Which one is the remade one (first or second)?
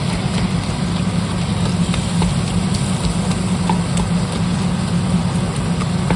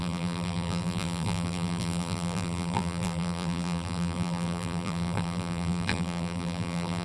second